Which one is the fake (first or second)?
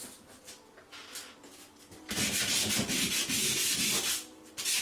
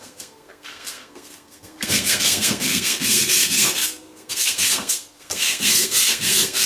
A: second